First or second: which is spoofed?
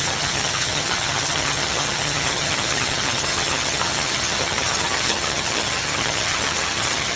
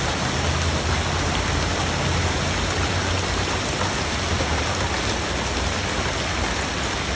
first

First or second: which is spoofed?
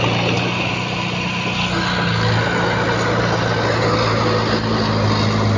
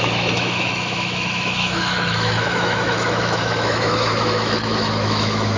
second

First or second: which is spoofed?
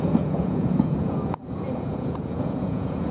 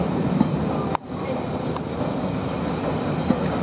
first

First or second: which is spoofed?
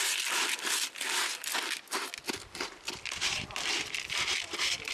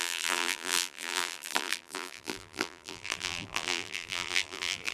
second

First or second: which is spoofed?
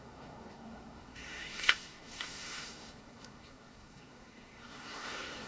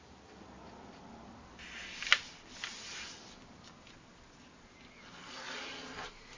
first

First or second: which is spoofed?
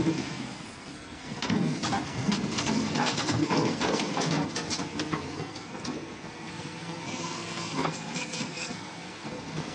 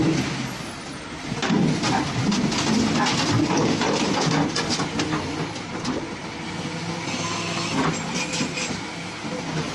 first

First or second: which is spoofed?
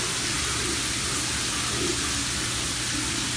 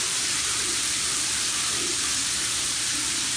second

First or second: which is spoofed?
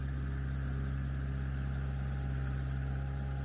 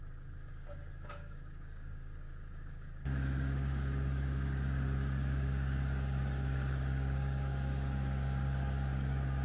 second